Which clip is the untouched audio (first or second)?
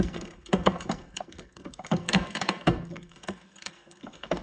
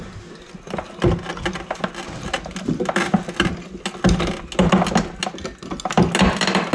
second